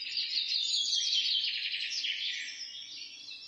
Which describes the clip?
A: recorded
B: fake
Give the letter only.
B